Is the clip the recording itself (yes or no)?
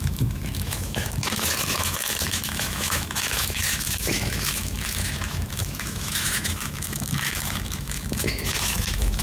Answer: no